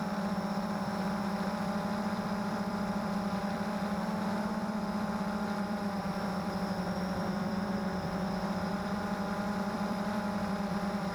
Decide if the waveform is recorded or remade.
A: remade